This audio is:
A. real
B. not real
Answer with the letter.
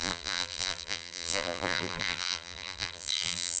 B